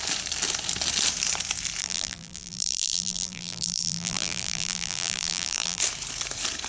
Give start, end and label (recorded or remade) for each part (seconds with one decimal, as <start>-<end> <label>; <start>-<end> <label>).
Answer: 0.0-1.8 recorded; 1.8-5.8 remade; 5.8-6.7 recorded